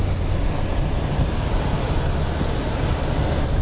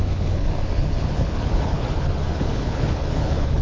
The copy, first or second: second